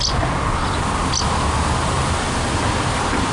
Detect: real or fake real